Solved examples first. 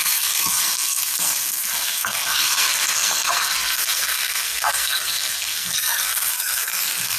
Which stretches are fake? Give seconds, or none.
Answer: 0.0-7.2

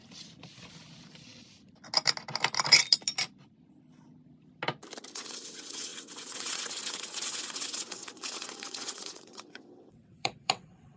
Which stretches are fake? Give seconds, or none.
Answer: 5.1-11.0

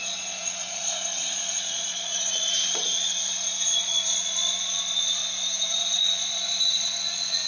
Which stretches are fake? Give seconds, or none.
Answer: 0.0-5.2; 5.7-7.5

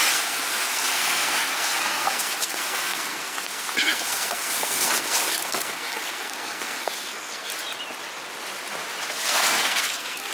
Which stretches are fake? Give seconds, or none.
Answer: 0.0-7.5; 9.1-10.3

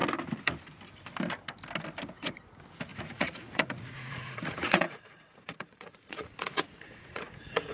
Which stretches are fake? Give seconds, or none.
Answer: 2.9-7.7

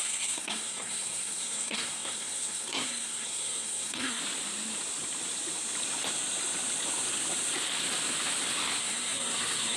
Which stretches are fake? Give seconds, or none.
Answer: 0.0-4.2; 8.8-9.8

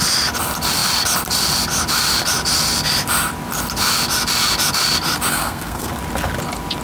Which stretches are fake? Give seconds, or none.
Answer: 5.3-5.9

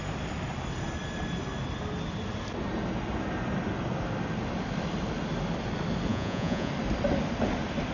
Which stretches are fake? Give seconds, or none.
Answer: 6.1-6.7